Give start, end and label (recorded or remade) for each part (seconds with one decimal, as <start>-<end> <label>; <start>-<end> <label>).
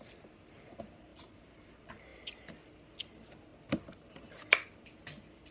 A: 0.0-1.1 recorded; 1.1-1.7 remade; 1.7-3.5 recorded; 3.5-4.4 remade; 4.4-5.5 recorded